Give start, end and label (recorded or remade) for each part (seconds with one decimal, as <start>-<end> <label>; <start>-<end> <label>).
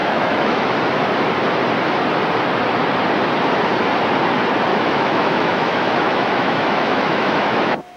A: 0.0-0.7 remade; 0.7-4.7 recorded; 4.7-8.0 remade